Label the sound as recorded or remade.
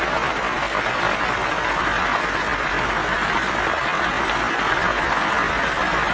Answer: recorded